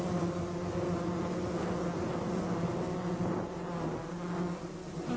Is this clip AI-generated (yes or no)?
no